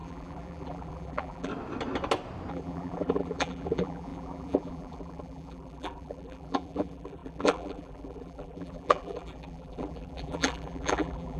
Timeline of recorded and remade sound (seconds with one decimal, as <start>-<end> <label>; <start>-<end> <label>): 0.0-1.5 remade; 1.5-2.5 recorded; 2.5-11.4 remade